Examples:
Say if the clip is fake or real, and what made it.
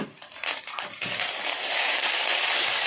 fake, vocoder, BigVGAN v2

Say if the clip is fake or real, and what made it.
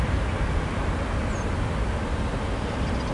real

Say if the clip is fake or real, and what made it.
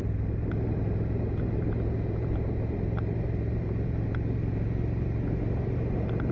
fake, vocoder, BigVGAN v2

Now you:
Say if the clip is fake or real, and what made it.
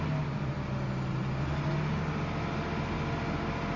real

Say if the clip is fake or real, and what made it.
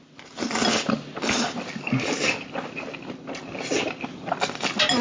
real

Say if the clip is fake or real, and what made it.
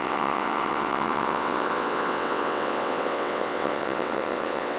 fake, vocoder, WaveNeXt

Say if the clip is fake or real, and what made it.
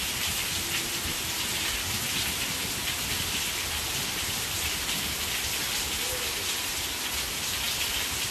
real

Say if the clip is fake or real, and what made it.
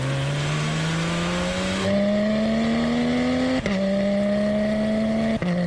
real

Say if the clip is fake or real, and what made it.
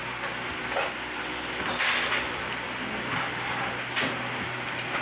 real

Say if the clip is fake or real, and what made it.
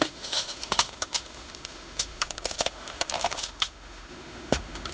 fake, autoencoder, DAC-VAE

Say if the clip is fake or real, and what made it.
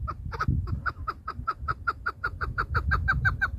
fake, vocoder, BigVGAN v2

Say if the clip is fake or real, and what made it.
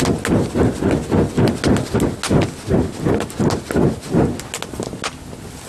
real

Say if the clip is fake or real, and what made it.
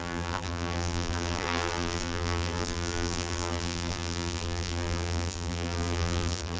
fake, vocoder, BigVGAN v2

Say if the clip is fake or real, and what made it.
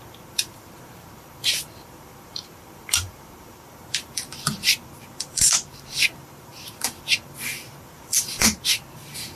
fake, vocoder, BigVGAN v2